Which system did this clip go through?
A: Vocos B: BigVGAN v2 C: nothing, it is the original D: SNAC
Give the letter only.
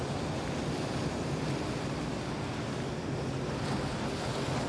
C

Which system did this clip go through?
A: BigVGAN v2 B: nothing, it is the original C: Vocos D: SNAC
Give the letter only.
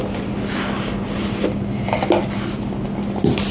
B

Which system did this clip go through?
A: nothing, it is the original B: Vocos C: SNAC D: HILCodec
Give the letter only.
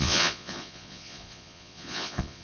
B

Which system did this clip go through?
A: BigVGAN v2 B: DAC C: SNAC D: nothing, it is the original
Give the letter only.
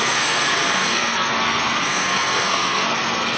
C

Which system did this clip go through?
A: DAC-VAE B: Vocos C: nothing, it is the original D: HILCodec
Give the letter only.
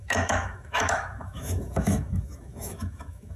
A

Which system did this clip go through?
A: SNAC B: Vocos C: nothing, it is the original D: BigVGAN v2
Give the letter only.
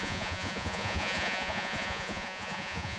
B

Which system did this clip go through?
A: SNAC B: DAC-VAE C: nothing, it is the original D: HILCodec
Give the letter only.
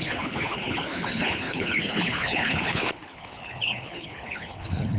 D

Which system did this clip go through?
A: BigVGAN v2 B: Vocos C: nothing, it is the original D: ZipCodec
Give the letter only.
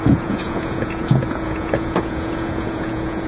B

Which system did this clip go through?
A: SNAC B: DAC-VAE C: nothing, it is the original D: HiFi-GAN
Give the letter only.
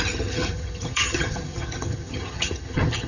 D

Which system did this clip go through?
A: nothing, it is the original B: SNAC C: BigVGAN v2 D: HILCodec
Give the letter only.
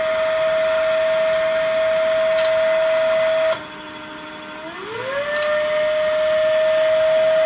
A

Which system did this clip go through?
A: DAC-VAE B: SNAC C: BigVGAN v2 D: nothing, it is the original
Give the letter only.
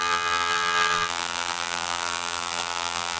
C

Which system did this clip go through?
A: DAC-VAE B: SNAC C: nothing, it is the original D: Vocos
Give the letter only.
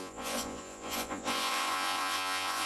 D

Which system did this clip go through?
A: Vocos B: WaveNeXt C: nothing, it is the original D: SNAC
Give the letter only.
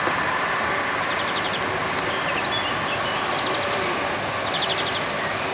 C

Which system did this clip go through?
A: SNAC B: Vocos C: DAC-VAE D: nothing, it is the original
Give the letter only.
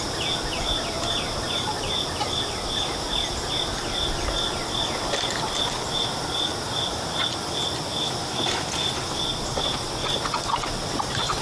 D